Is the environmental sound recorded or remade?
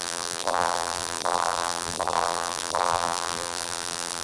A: remade